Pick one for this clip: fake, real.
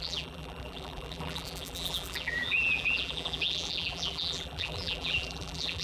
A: fake